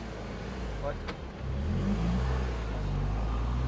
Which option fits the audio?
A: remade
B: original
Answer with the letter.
B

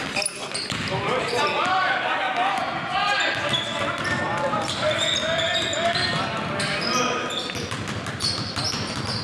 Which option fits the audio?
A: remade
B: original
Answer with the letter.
B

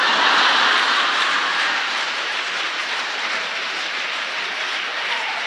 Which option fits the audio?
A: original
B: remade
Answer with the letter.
B